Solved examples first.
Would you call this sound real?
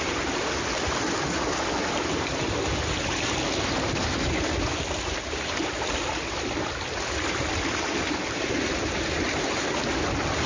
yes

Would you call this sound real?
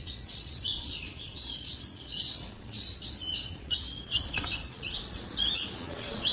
no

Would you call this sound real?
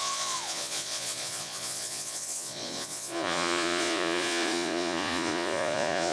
no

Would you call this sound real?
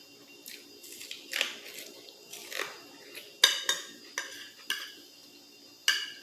yes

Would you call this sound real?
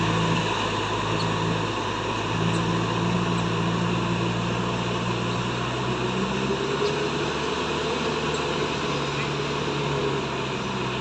yes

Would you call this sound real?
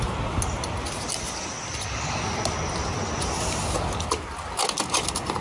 yes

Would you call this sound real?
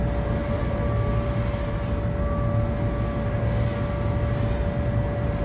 yes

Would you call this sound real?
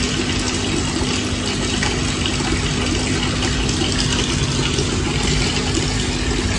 yes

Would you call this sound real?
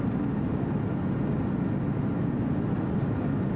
yes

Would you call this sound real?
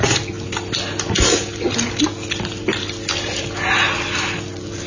yes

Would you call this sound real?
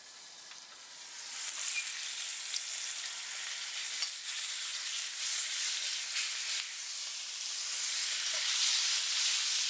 yes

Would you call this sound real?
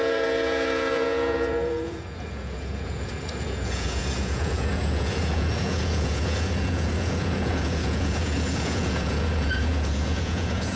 no